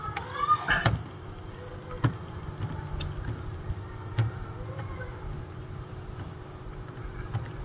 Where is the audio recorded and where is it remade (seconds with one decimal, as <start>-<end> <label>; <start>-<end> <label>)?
0.0-7.6 recorded